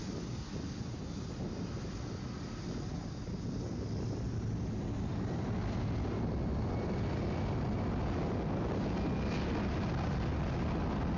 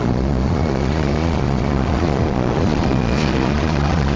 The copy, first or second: second